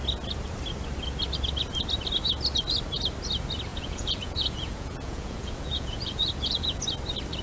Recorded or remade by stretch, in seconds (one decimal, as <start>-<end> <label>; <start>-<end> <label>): 0.0-3.7 recorded; 3.7-6.8 remade; 6.8-7.4 recorded